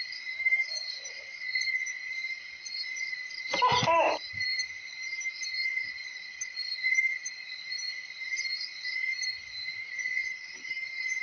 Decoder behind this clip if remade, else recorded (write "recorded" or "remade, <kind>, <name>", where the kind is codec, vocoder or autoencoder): remade, vocoder, BigVGAN v2